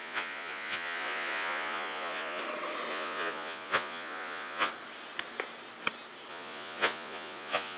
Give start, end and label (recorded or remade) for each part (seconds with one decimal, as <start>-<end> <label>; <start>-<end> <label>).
0.0-2.4 remade; 2.4-2.9 recorded; 2.9-4.7 remade; 4.7-6.3 recorded; 6.3-7.8 remade